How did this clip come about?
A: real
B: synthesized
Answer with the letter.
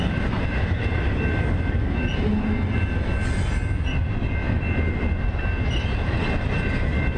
A